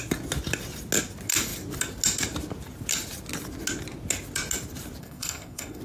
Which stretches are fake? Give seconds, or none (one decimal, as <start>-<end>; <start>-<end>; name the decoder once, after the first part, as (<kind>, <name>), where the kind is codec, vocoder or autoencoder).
5.0-5.8 (codec, SNAC)